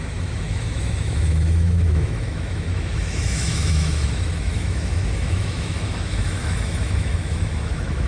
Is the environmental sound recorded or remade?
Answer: remade